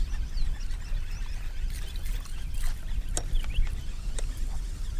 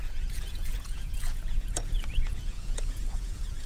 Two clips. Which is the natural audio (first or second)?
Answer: first